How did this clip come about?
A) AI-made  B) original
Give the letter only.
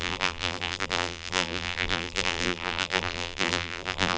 A